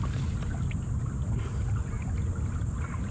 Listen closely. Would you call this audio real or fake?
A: real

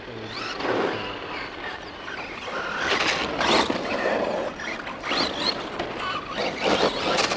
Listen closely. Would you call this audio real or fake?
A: real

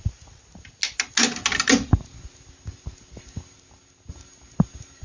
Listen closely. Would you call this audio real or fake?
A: real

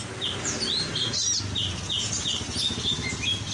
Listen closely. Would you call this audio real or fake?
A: real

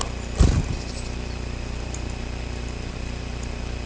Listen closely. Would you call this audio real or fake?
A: real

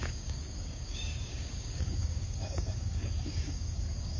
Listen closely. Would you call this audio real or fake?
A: fake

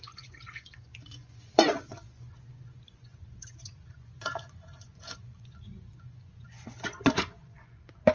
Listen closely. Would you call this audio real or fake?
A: fake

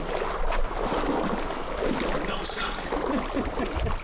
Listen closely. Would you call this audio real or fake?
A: real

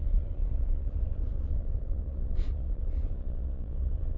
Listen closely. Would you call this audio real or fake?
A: fake